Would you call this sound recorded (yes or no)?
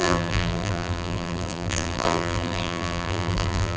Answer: no